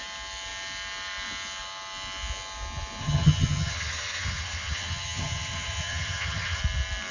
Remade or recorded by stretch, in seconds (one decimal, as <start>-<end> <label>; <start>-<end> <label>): 0.0-3.0 recorded; 3.0-6.6 remade; 6.6-7.1 recorded